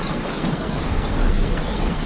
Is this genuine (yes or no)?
no